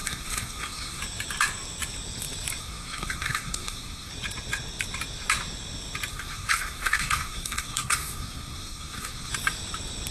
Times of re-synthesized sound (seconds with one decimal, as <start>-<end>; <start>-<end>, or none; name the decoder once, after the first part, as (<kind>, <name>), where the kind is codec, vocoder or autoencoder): 0.0-1.0 (codec, SNAC); 2.6-4.1; 6.1-9.3